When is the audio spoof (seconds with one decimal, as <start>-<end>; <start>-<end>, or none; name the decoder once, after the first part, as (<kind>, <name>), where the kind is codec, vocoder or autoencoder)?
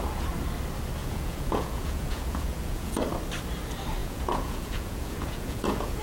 1.0-3.0 (vocoder, Vocos); 4.0-6.0